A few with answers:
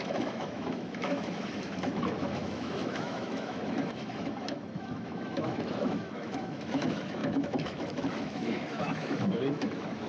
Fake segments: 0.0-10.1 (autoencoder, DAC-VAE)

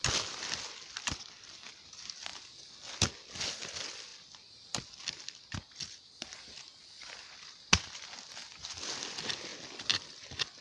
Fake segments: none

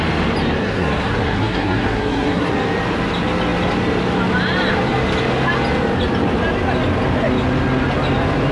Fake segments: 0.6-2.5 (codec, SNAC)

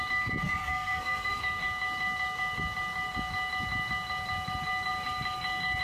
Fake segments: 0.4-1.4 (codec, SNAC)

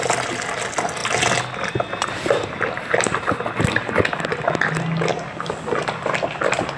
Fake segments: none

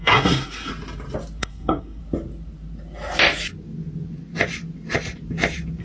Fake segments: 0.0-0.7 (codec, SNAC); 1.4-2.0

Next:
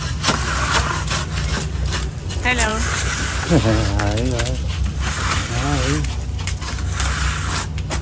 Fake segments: none

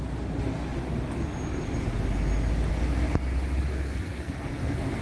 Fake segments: 3.7-5.0 (codec, SNAC)